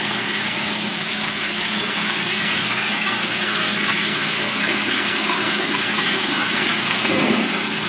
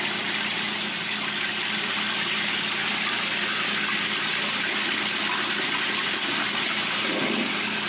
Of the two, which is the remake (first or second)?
first